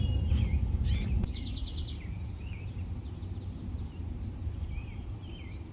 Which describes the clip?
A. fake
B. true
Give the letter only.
B